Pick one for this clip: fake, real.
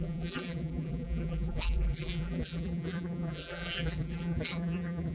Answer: fake